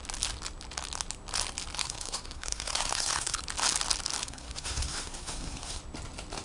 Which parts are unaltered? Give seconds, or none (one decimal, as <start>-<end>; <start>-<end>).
0.0-1.8; 3.4-4.2; 5.8-6.4

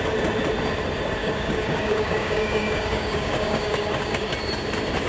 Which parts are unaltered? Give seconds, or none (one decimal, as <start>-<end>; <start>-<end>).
0.0-1.2; 4.3-5.1

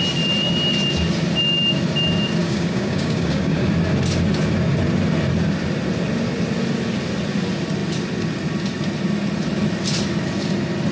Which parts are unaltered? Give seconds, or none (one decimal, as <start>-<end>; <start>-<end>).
0.0-2.4; 3.7-10.9

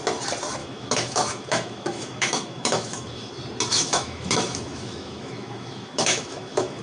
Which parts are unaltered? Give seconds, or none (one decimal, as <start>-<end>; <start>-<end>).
0.0-0.6; 3.3-3.7

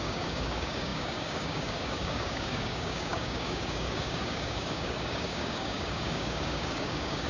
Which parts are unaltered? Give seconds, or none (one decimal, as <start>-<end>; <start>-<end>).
none

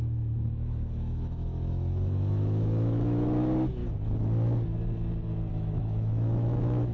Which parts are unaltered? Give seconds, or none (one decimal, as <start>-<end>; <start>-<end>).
3.8-5.5

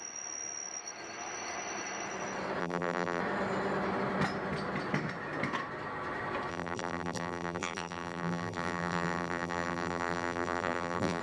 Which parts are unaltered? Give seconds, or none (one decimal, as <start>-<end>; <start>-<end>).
0.0-2.6; 3.2-6.5